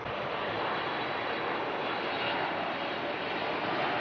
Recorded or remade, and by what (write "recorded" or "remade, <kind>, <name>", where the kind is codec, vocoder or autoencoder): remade, vocoder, BigVGAN v2